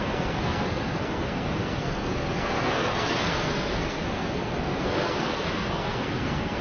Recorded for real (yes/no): no